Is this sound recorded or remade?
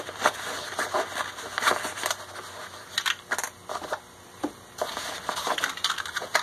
recorded